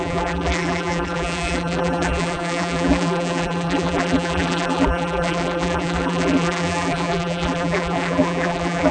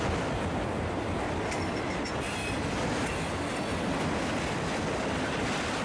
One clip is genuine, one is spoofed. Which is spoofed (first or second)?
first